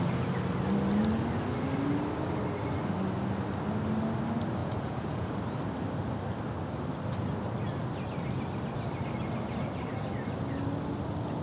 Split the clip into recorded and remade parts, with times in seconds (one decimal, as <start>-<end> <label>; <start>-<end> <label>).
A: 0.0-4.6 recorded; 4.6-5.3 remade; 5.3-11.4 recorded